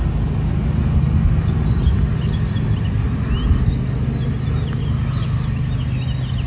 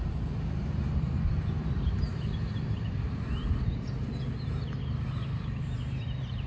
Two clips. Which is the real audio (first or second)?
first